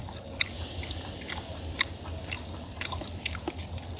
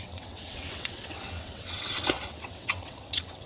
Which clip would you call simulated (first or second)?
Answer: second